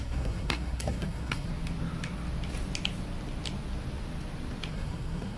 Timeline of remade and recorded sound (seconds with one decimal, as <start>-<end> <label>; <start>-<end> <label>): 0.0-1.5 remade; 1.5-4.7 recorded; 4.7-5.4 remade